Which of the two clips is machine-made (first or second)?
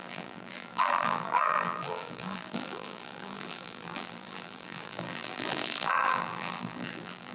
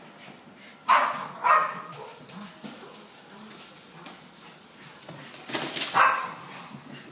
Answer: first